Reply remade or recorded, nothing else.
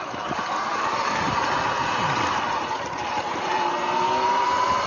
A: recorded